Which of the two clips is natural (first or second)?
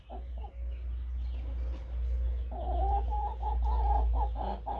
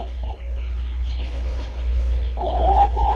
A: first